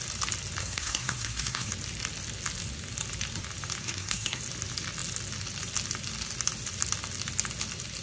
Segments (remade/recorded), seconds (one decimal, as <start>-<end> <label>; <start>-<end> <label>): 0.0-0.6 recorded; 0.6-1.7 remade; 1.7-3.8 recorded; 3.8-4.4 remade; 4.4-8.0 recorded